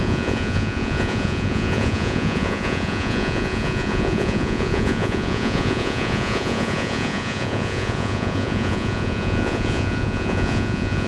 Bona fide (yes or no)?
no